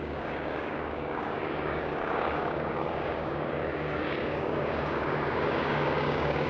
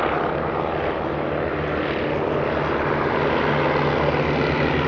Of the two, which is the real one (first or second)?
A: second